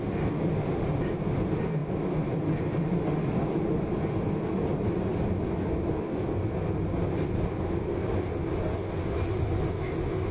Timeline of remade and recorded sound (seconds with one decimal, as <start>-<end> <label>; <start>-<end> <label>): 0.0-10.3 recorded